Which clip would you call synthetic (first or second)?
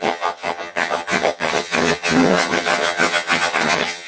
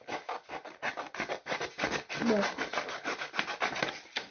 first